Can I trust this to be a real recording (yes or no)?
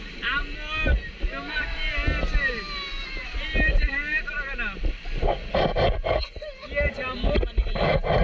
yes